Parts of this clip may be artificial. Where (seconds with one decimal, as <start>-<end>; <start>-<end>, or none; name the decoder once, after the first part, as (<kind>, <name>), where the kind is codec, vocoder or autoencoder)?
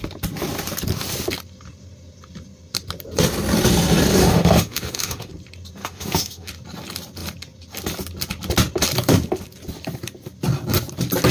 4.2-5.3 (autoencoder, DAC-VAE); 5.8-6.5